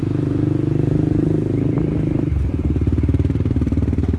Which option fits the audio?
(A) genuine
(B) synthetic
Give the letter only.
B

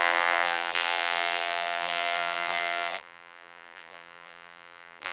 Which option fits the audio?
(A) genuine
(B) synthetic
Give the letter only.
B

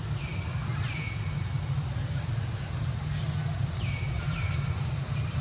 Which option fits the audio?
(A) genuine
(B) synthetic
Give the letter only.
B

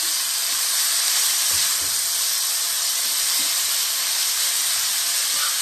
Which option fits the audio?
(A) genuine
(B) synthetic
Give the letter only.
A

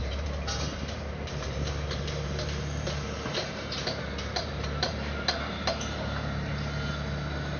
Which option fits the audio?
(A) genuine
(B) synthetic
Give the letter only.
B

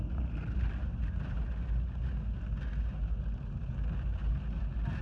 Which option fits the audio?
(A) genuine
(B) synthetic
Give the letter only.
A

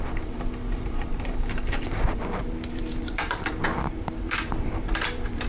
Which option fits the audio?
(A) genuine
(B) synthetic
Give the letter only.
B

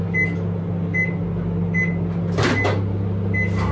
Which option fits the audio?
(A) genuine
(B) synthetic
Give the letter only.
A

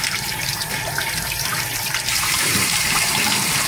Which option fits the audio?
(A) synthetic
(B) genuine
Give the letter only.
A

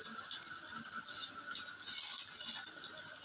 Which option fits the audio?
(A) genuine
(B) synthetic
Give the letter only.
A